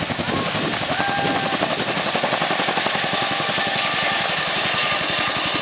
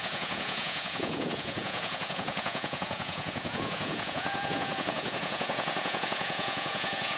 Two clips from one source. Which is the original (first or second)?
first